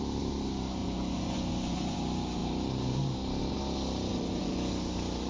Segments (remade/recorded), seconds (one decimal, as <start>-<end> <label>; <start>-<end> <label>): 0.0-0.8 recorded; 0.8-2.0 remade; 2.0-4.1 recorded; 4.1-4.7 remade; 4.7-5.3 recorded